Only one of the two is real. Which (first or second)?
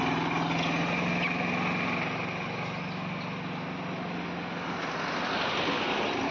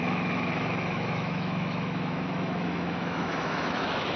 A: first